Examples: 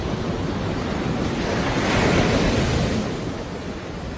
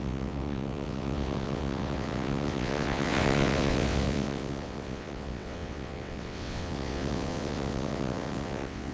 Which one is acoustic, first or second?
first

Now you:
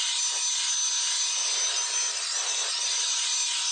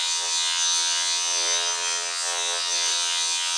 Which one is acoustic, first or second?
first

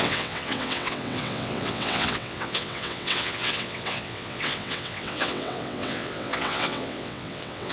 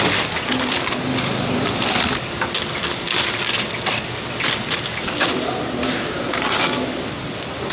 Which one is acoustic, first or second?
second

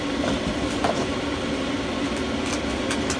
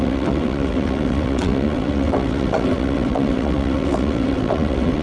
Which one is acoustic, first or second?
first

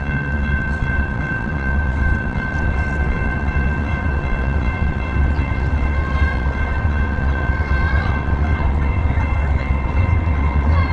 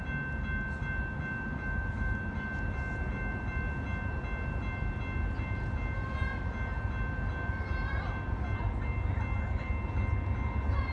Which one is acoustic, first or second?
second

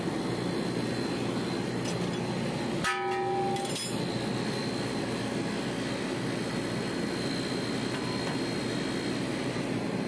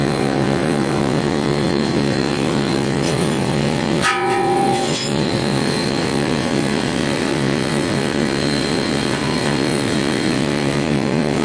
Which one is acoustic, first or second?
first